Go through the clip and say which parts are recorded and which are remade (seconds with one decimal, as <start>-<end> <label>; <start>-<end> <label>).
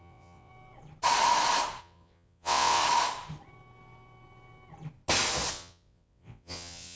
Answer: 0.0-0.5 remade; 0.5-1.8 recorded; 1.8-2.8 remade; 2.8-5.5 recorded; 5.5-7.0 remade